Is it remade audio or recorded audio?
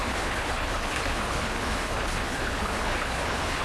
remade